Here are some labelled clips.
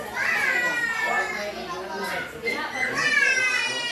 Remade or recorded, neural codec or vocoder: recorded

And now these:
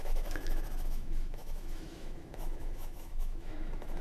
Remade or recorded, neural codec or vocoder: remade, autoencoder, DAC-VAE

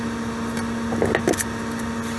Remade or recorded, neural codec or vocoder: recorded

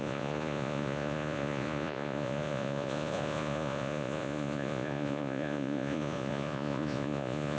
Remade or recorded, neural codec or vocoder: remade, vocoder, Vocos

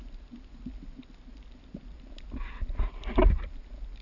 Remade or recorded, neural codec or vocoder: recorded